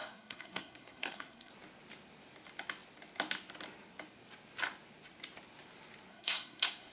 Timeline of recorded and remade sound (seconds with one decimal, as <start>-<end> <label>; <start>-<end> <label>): 0.0-1.5 remade; 1.5-6.1 recorded; 6.1-6.9 remade